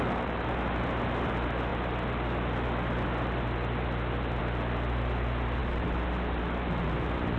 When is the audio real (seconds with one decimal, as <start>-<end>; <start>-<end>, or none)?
0.0-7.4